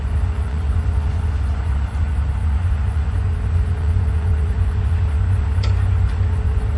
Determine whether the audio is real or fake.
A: fake